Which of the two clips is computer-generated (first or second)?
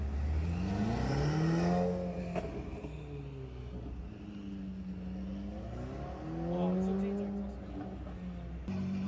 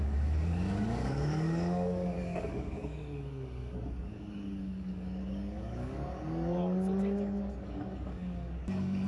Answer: second